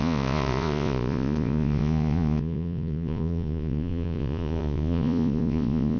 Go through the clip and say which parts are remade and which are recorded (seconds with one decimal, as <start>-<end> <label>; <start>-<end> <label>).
0.0-6.0 remade